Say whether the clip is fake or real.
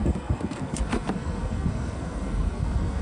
fake